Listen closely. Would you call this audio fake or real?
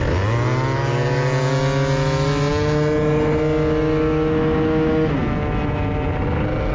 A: real